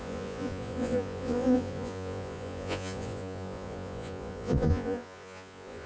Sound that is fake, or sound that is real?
fake